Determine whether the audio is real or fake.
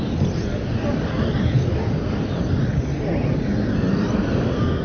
fake